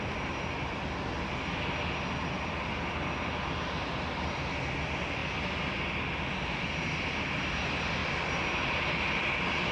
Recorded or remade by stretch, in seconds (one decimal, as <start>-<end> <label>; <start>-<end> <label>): 0.0-9.7 recorded